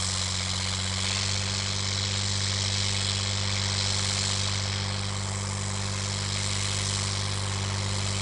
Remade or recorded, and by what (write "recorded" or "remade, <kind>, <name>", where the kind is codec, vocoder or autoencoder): recorded